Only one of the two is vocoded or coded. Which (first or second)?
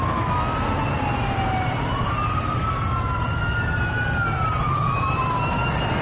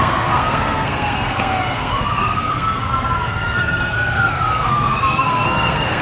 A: second